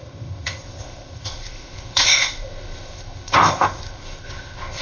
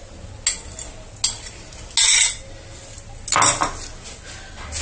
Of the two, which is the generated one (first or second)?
first